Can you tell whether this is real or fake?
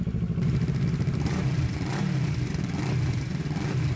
real